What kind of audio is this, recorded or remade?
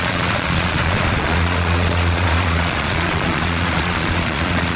remade